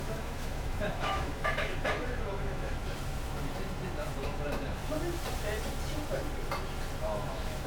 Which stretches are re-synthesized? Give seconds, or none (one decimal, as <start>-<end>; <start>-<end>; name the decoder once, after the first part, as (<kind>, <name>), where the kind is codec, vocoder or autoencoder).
0.0-2.8 (autoencoder, DAC-VAE); 4.2-4.8; 7.0-7.7

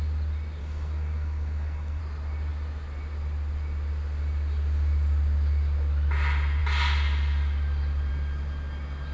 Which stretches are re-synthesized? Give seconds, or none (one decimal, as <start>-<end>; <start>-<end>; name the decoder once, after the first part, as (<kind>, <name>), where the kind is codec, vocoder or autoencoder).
0.6-2.0 (codec, SNAC)

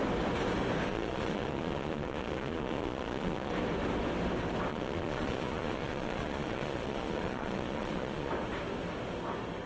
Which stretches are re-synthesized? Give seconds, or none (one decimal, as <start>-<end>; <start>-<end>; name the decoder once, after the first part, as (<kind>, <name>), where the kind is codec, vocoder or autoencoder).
0.9-3.5 (vocoder, Vocos); 4.7-8.3

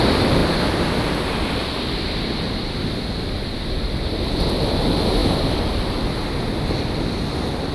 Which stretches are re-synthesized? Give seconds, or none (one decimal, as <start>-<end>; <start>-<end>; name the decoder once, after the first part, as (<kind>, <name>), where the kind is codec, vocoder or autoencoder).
none

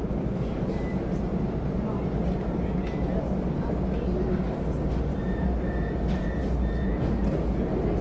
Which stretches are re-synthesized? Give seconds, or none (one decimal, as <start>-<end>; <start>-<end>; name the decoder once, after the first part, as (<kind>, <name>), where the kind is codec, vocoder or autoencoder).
none

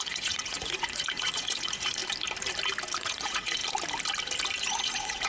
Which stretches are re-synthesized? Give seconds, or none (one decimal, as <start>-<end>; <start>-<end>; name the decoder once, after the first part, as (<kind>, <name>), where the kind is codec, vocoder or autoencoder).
0.0-2.0 (vocoder, Vocos); 3.0-3.6; 4.6-5.3

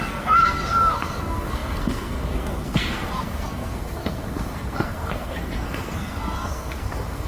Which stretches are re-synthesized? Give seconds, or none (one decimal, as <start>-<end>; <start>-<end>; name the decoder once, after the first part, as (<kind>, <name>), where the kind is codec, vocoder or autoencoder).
0.0-7.3 (codec, SNAC)

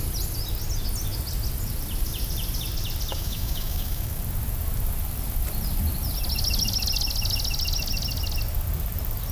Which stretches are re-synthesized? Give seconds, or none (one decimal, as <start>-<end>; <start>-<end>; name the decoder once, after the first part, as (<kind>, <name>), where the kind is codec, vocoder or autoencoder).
3.1-4.2 (autoencoder, DAC-VAE)